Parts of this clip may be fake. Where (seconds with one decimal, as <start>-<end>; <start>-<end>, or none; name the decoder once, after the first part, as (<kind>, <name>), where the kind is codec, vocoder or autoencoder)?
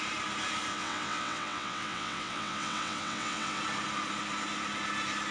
0.7-3.6 (vocoder, WaveNeXt)